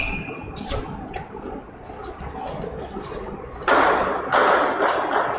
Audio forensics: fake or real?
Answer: real